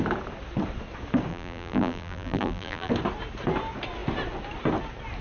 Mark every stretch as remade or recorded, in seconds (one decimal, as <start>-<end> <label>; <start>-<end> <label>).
0.0-1.3 recorded; 1.3-2.9 remade; 2.9-5.2 recorded